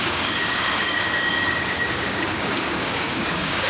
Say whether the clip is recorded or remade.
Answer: remade